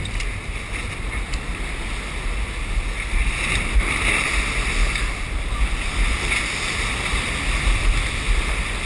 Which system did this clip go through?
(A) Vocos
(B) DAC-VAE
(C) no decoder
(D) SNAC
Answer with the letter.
C